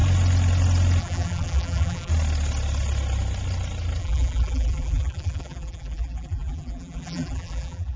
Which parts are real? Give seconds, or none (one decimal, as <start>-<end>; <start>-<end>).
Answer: 0.0-1.0; 2.1-4.0